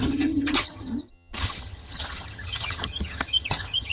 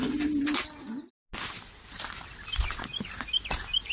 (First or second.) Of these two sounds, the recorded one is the second